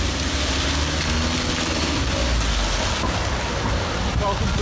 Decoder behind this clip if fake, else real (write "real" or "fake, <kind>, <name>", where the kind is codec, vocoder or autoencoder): real